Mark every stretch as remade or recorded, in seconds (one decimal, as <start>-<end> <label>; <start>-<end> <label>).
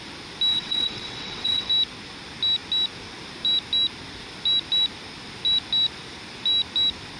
0.0-0.5 recorded; 0.5-1.7 remade; 1.7-7.2 recorded